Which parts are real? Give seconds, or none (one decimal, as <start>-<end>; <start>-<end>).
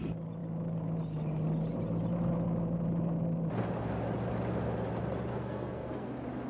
0.0-5.3; 6.1-6.5